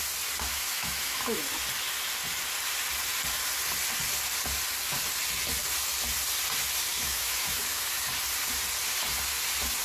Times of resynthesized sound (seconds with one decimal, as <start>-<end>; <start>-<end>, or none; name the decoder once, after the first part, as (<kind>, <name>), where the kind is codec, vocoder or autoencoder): 0.5-1.6 (autoencoder, DAC-VAE); 6.9-8.1